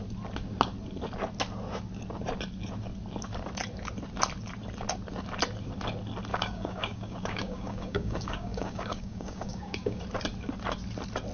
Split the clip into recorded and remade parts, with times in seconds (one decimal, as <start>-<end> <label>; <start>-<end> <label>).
0.0-6.3 recorded; 6.3-10.0 remade; 10.0-11.3 recorded